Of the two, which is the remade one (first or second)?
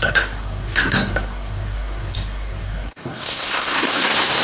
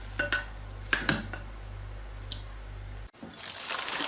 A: first